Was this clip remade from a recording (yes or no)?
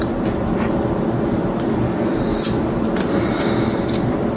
no